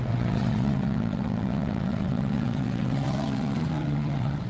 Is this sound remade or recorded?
remade